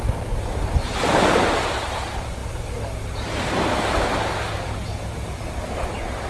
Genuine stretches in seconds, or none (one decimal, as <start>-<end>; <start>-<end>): 0.0-6.3